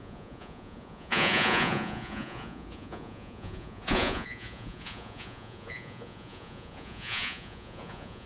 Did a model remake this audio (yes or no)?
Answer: yes